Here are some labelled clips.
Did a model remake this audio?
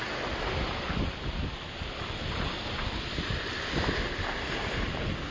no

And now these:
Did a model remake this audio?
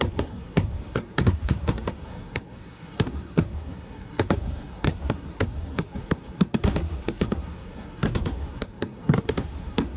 yes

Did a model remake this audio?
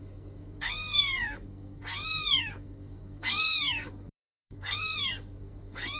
yes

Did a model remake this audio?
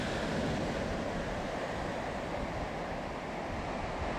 no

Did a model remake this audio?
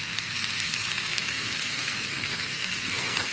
yes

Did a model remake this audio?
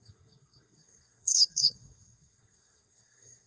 yes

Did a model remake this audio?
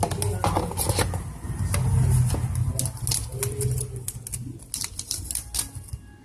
no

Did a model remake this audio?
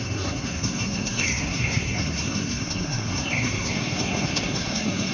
yes